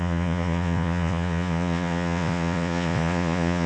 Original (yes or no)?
no